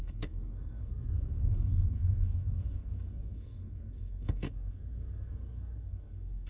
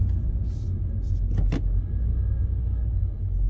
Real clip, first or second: second